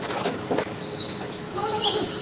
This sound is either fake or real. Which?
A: fake